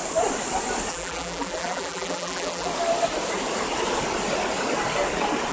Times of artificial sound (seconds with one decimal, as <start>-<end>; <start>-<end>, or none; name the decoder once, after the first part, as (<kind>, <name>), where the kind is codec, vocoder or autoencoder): 0.9-2.7 (vocoder, BigVGAN v2)